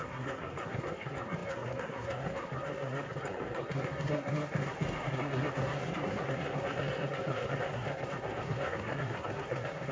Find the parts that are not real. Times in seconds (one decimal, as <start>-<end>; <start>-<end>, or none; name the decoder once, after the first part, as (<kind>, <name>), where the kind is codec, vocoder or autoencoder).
0.0-9.9 (codec, SNAC)